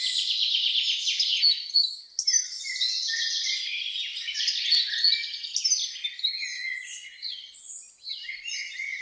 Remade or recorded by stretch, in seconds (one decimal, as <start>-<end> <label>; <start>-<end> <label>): 0.0-9.0 recorded